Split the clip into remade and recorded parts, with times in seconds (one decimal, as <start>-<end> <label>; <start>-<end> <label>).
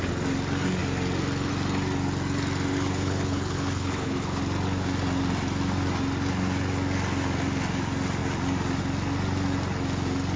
0.0-2.7 recorded; 2.7-4.4 remade; 4.4-10.4 recorded